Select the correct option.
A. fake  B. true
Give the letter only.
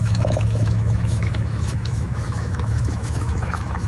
A